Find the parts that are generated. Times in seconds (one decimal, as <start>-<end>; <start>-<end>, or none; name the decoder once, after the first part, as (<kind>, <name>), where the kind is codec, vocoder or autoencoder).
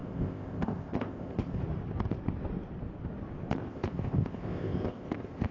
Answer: 0.0-1.6 (codec, ZipCodec); 3.7-5.5